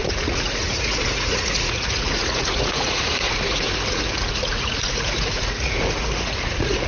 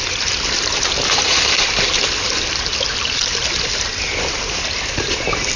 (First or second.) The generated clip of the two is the first